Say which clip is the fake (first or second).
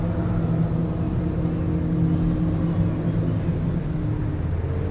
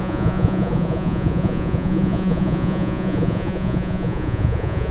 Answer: second